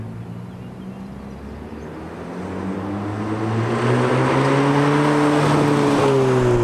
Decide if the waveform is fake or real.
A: real